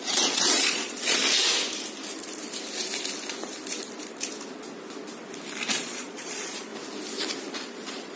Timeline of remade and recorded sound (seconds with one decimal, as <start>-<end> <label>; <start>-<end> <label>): 0.0-1.2 remade; 1.2-5.7 recorded; 5.7-6.7 remade; 6.7-7.5 recorded; 7.5-8.2 remade

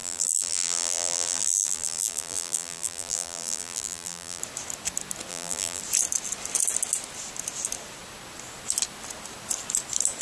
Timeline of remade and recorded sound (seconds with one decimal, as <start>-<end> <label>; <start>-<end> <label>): 0.0-4.4 remade; 4.4-5.3 recorded; 5.3-5.8 remade; 5.8-10.2 recorded

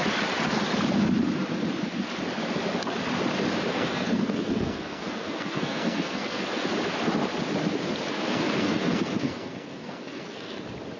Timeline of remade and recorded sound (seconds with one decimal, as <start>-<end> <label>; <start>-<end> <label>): 0.0-3.7 recorded; 3.7-6.7 remade; 6.7-8.1 recorded; 8.1-10.6 remade; 10.6-11.0 recorded

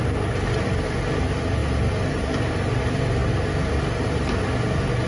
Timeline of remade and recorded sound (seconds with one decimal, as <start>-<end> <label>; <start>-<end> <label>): 0.0-5.1 recorded

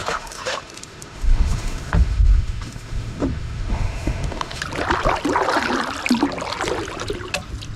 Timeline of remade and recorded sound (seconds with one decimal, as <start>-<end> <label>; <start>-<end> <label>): 0.0-4.6 remade; 4.6-7.8 recorded

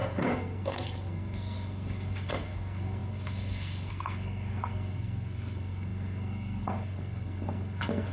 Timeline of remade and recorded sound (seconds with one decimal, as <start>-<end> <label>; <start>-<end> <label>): 0.0-8.1 remade

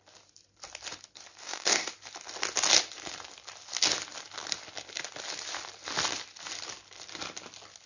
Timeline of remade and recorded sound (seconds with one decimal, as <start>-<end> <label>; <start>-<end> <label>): 0.0-1.4 recorded; 1.4-1.9 remade; 1.9-7.9 recorded

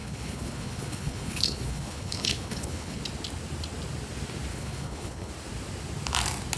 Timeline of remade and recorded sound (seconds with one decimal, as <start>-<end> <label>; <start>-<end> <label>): 0.0-3.0 remade; 3.0-4.5 recorded; 4.5-5.3 remade; 5.3-6.6 recorded